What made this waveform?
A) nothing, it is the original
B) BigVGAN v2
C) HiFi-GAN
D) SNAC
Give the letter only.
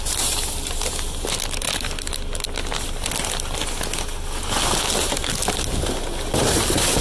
A